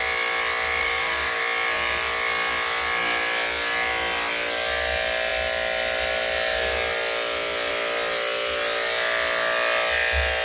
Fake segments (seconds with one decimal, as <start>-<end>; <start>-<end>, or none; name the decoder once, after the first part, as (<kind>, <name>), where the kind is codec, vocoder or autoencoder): 0.8-1.4 (codec, DAC)